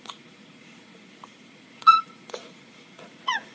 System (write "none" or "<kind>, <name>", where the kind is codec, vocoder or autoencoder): vocoder, Vocos